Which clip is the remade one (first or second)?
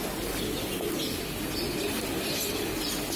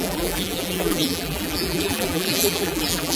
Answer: second